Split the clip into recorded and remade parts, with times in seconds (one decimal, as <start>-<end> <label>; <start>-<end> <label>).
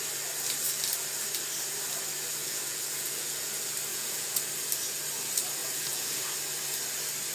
0.0-2.4 recorded; 2.4-3.5 remade; 3.5-3.9 recorded; 3.9-4.4 remade; 4.4-5.6 recorded; 5.6-6.4 remade; 6.4-7.3 recorded